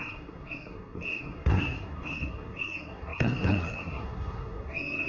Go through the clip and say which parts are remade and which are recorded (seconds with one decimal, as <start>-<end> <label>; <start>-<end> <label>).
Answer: 0.0-5.1 remade